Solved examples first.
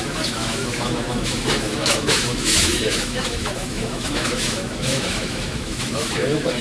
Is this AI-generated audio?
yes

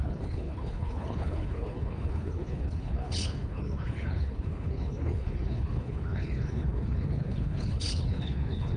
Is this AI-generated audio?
yes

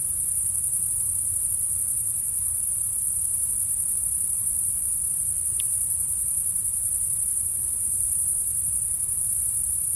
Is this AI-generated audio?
yes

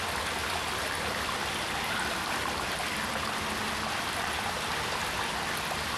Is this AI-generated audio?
no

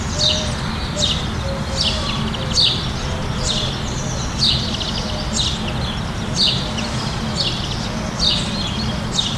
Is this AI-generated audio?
no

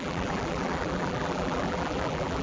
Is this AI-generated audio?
yes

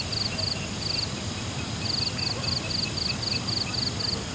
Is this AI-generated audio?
no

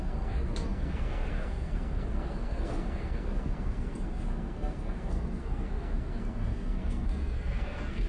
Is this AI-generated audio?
yes